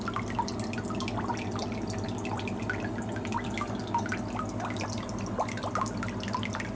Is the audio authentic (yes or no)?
yes